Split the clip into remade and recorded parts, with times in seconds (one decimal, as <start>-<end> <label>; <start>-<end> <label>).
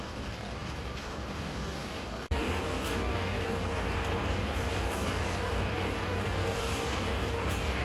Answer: 0.0-7.8 remade